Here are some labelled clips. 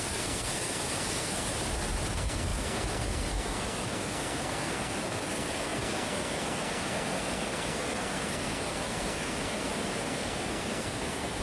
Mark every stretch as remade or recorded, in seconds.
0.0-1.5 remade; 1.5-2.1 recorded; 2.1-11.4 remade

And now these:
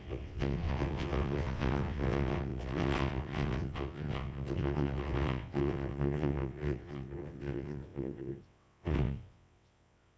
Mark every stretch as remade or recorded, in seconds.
0.0-10.2 remade